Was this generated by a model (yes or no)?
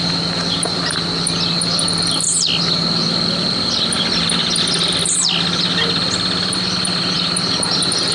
no